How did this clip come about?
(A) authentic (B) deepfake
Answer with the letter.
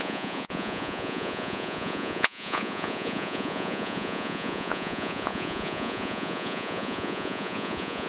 B